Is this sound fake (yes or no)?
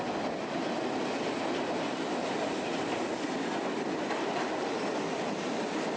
no